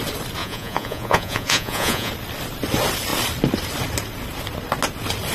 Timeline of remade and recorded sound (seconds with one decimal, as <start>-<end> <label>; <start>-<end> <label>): 0.0-0.4 recorded; 0.4-2.1 remade; 2.1-5.3 recorded